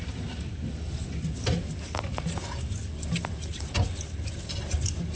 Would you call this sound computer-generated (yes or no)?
no